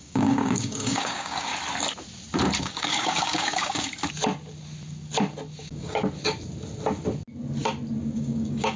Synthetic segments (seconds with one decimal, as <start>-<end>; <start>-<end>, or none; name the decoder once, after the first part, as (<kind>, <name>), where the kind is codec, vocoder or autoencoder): 0.0-1.5 (codec, DAC); 2.6-3.9; 5.6-6.0; 8.0-8.8

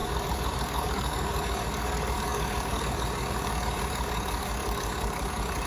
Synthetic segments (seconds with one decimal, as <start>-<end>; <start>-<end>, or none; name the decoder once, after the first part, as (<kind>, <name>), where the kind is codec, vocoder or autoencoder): 0.0-5.7 (codec, DAC)

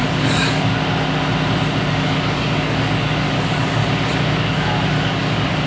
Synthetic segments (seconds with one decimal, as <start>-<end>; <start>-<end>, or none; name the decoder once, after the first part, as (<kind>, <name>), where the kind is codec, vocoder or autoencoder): 0.0-0.7 (codec, DAC); 1.9-3.8; 4.4-5.7

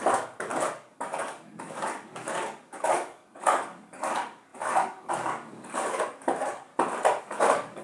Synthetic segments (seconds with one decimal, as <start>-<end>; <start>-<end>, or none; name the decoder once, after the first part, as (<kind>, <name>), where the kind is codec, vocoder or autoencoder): 0.0-6.7 (codec, DAC); 7.2-7.8

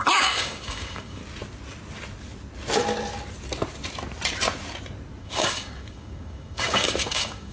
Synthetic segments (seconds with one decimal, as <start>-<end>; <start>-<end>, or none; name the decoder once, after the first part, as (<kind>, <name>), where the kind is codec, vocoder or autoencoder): 0.0-1.2 (codec, DAC); 5.2-7.5

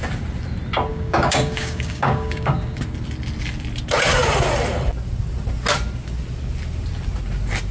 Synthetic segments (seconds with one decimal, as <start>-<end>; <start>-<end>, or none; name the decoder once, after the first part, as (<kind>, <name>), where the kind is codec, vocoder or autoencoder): 0.9-2.8 (codec, DAC)